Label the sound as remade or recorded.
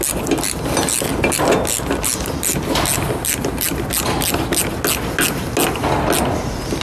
recorded